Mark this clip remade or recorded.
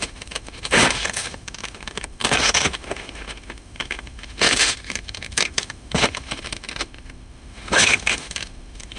remade